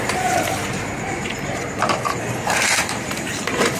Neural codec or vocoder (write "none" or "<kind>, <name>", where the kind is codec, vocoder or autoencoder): vocoder, BigVGAN v2